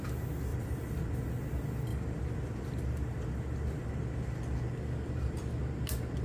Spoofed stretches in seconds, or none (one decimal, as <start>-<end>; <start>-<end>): 0.5-1.2; 1.9-3.9